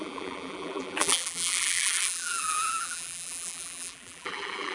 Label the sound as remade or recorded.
remade